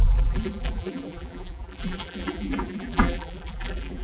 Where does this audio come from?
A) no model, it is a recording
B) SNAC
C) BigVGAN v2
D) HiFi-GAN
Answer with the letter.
C